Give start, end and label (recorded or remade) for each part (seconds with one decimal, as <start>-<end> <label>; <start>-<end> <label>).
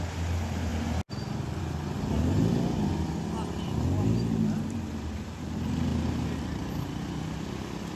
0.0-8.0 recorded